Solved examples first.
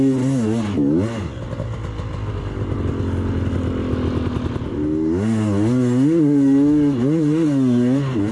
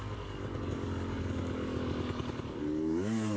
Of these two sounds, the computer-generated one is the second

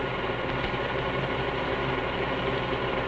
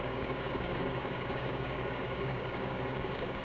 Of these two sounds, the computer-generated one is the second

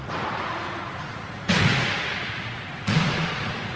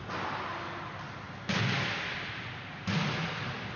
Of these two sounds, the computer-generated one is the first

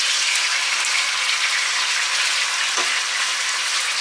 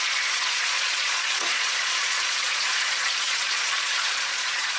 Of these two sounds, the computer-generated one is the second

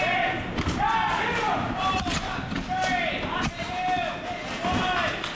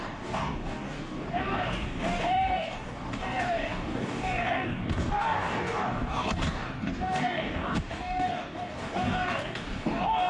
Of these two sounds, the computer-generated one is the second